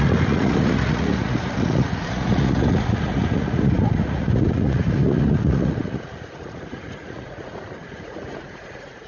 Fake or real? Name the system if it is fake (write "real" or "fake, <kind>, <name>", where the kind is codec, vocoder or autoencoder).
fake, vocoder, Vocos